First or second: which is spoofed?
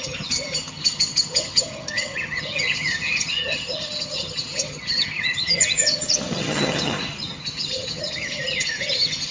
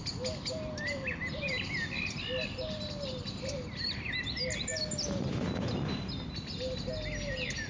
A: first